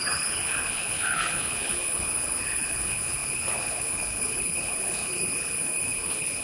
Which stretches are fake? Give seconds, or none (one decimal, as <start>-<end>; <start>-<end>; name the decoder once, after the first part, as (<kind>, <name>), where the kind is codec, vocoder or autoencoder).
0.0-6.4 (codec, HILCodec)